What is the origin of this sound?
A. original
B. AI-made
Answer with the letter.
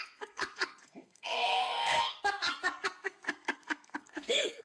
B